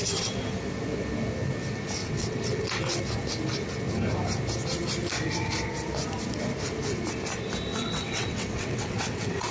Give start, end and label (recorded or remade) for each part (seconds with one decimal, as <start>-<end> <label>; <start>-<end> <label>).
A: 0.0-2.0 recorded; 2.0-3.0 remade; 3.0-7.7 recorded; 7.7-9.5 remade